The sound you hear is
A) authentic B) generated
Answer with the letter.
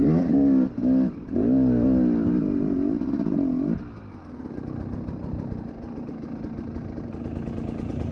A